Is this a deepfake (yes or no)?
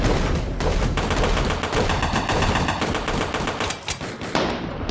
no